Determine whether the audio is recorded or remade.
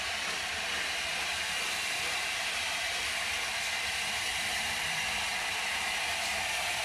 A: remade